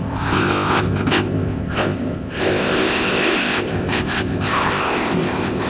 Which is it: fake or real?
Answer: fake